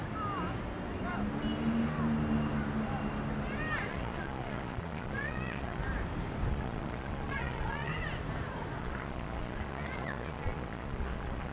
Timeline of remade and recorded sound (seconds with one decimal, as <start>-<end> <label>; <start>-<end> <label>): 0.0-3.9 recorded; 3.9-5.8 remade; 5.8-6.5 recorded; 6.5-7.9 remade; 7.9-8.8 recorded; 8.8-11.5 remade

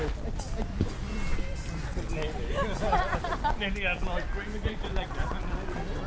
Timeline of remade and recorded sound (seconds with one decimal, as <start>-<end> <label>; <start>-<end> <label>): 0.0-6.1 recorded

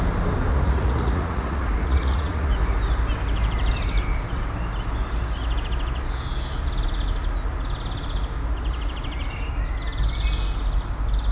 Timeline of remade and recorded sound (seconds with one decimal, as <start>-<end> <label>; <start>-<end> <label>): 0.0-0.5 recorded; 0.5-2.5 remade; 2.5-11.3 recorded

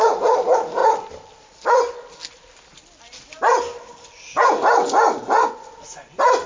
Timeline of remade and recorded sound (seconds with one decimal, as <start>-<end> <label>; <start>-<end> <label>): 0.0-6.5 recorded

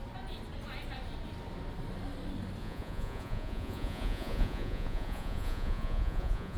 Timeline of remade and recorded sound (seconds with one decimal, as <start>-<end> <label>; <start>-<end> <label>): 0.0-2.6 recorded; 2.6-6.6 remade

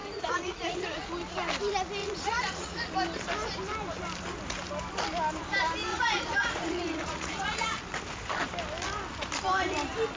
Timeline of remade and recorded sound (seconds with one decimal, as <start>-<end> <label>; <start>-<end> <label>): 0.0-1.1 remade; 1.1-2.0 recorded; 2.0-2.9 remade; 2.9-5.9 recorded; 5.9-7.8 remade; 7.8-10.2 recorded

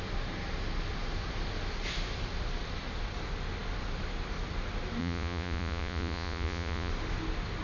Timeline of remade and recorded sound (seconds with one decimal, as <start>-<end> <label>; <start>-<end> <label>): 0.0-5.0 recorded; 5.0-6.9 remade; 6.9-7.6 recorded